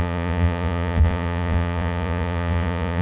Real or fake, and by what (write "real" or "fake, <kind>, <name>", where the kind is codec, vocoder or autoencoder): fake, vocoder, Vocos